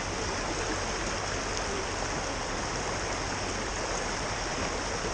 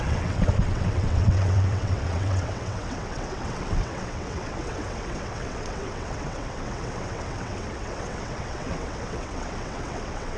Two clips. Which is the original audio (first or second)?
first